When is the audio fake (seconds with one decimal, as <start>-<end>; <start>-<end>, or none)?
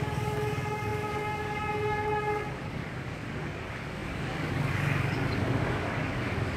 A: 0.0-6.6